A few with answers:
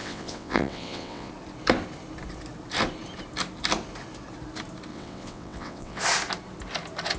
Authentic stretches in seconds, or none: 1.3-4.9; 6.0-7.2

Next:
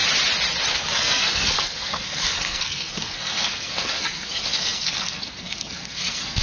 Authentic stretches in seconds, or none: 0.0-0.7

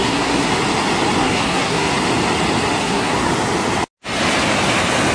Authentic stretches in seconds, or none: 0.5-1.2; 1.9-2.8; 3.3-5.1

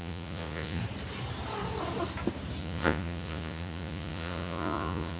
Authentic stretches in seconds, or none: 0.8-2.6

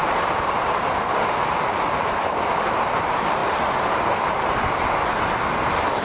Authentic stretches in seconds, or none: 0.0-6.0